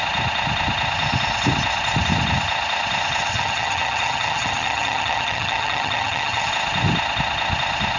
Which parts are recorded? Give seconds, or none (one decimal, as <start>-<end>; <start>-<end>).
0.0-3.3; 6.5-8.0